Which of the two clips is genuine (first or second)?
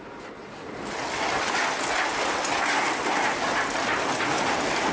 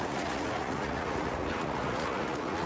first